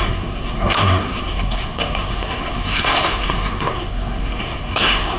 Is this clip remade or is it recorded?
remade